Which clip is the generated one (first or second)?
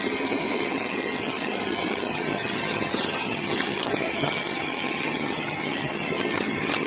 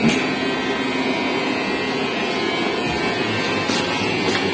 first